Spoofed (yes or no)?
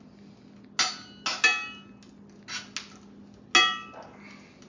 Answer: no